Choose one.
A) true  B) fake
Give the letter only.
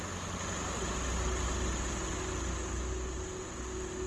A